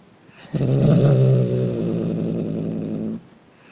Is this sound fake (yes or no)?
no